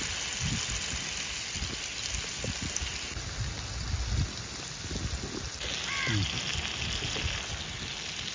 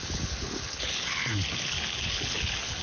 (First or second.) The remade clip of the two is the second